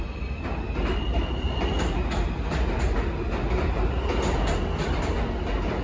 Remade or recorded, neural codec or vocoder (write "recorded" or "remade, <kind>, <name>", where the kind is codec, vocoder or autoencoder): recorded